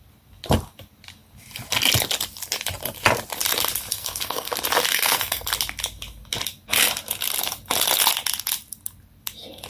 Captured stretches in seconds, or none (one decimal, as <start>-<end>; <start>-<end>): 0.0-3.9; 4.5-4.9; 5.5-9.7